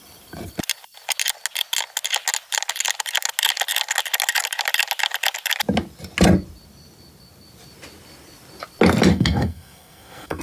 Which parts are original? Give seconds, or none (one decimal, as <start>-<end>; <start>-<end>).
0.0-9.1